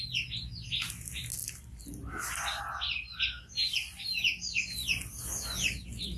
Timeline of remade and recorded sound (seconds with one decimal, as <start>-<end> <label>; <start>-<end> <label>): 0.0-6.2 recorded